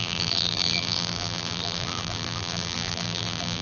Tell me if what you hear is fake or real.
fake